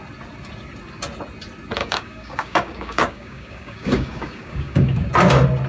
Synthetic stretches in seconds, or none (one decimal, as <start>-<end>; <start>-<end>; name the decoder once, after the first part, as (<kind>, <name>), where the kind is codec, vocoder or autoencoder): 1.8-5.1 (codec, DAC)